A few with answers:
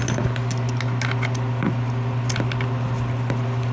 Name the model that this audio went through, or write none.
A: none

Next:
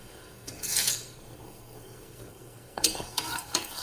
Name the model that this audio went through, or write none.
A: codec, SNAC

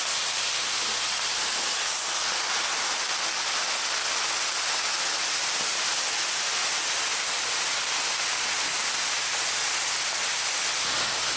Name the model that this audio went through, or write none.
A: none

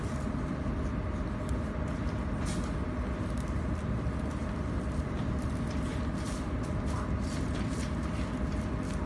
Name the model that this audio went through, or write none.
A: none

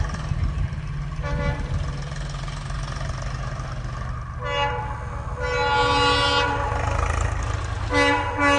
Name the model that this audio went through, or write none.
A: none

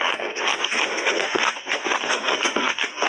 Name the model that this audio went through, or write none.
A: codec, SNAC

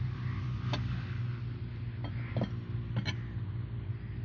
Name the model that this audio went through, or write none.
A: none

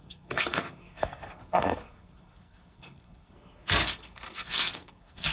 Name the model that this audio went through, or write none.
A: codec, SNAC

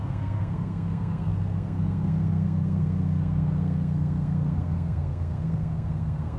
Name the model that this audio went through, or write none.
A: codec, SNAC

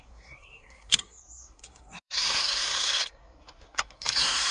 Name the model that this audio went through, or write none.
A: codec, SNAC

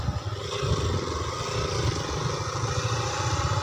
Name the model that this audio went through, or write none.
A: none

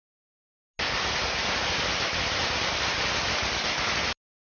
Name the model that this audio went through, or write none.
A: none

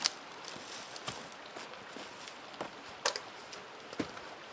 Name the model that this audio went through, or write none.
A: none